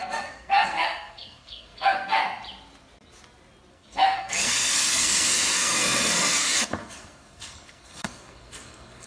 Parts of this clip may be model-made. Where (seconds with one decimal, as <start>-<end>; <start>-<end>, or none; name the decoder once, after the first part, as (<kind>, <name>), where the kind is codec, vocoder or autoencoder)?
0.0-2.2 (codec, SNAC); 3.7-9.1